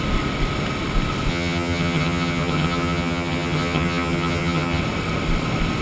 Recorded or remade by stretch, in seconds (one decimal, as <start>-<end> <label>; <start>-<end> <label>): 0.0-1.3 recorded; 1.3-4.8 remade; 4.8-5.8 recorded